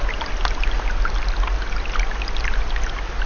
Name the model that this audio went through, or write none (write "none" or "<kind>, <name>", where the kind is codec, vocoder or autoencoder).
none